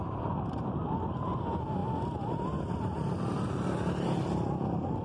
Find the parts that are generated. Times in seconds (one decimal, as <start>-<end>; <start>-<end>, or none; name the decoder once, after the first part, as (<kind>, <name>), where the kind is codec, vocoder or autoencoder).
none